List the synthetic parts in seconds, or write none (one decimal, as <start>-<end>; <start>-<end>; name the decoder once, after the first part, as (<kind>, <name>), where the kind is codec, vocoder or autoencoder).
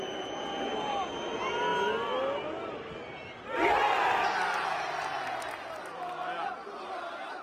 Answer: none